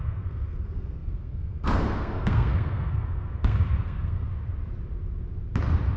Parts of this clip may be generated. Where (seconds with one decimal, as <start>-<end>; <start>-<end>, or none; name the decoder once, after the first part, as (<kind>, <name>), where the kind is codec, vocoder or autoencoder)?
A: 0.0-4.3 (codec, SNAC)